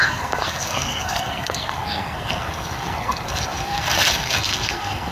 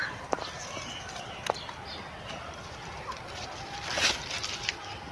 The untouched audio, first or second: second